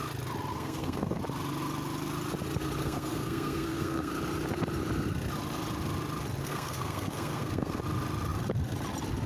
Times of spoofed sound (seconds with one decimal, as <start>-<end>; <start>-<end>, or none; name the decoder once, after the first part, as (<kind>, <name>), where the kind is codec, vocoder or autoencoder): 0.5-1.2 (codec, SNAC); 2.8-4.1; 6.4-7.8